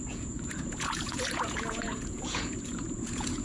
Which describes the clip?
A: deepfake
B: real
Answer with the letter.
A